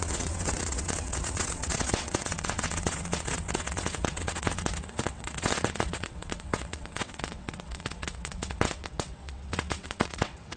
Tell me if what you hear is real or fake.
fake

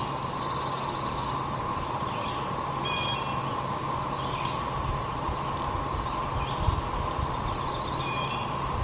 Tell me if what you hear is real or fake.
real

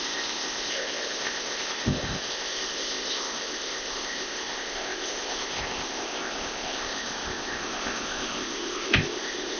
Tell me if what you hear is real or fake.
fake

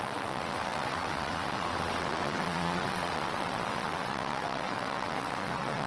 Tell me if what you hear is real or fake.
fake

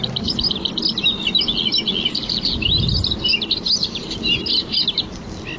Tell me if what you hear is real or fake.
real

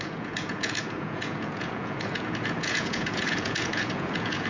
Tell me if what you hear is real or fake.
fake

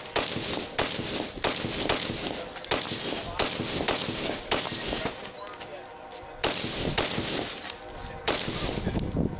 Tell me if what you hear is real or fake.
real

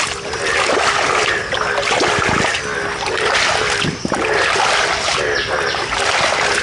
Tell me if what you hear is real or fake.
real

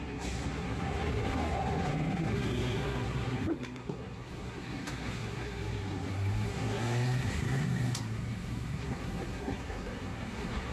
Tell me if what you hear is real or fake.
fake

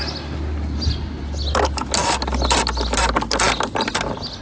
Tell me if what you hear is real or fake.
real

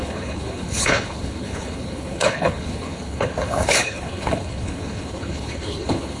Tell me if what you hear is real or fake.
fake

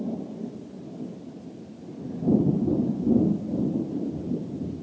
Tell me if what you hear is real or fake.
real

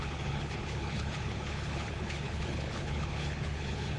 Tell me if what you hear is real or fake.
fake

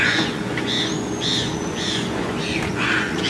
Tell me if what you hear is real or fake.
fake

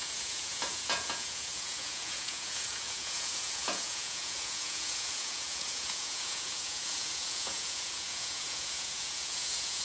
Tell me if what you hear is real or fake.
fake